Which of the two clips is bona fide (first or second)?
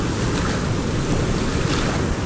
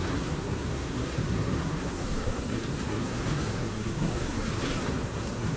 first